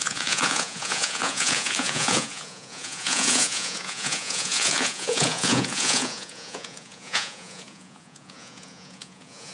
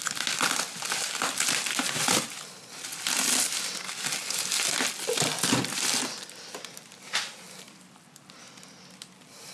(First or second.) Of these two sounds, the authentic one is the second